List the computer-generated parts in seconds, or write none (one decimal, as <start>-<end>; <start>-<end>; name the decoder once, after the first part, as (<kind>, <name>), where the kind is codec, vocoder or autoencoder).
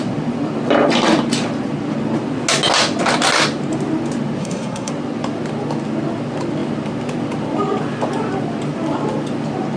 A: 4.4-4.9 (codec, SNAC)